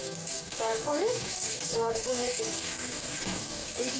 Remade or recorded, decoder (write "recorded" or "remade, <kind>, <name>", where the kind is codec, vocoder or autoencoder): remade, codec, DAC